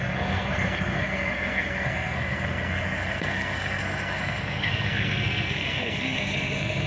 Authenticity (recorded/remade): remade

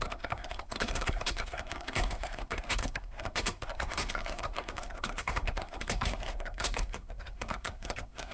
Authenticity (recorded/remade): remade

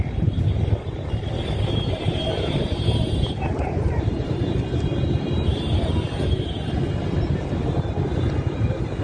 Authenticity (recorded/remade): remade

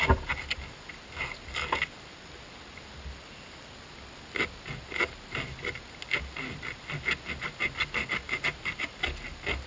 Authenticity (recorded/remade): recorded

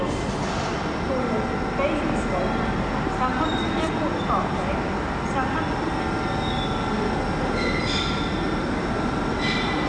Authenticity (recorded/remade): recorded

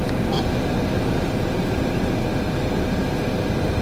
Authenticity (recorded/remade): recorded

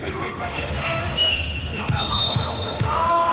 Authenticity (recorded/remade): remade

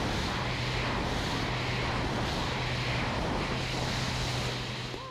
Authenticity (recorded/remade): recorded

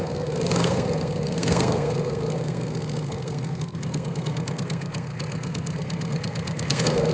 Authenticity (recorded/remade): remade